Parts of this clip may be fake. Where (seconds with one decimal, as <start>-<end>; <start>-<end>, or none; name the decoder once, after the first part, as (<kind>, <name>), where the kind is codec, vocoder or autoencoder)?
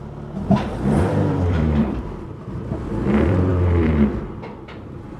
0.0-5.2 (vocoder, BigVGAN v2)